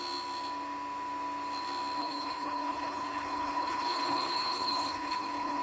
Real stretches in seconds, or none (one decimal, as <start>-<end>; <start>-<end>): 0.0-2.0